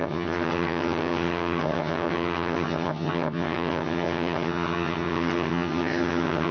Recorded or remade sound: remade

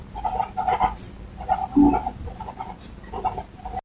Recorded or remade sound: recorded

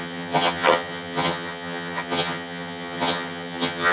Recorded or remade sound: remade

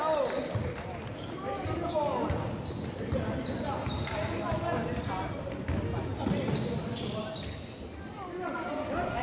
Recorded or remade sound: recorded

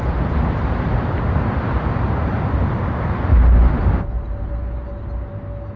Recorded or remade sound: recorded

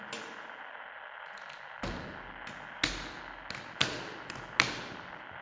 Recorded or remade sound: recorded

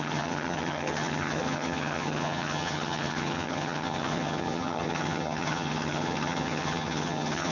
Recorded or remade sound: remade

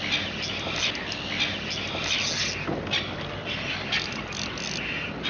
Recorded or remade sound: recorded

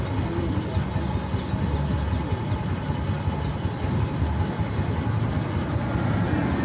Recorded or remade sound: recorded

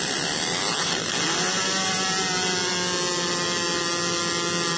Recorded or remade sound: recorded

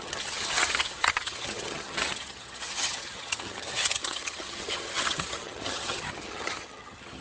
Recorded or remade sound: remade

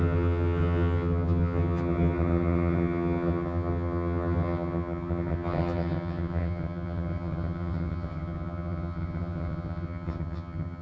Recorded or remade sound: remade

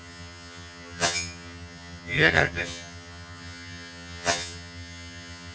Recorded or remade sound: remade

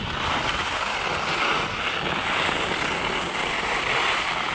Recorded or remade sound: recorded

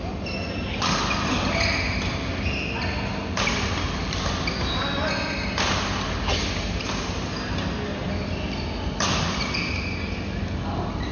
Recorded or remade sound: recorded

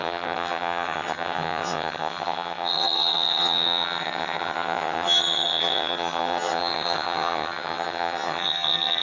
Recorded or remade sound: remade